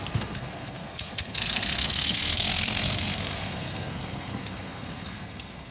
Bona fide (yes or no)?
no